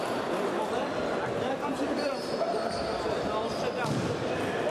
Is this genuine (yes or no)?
yes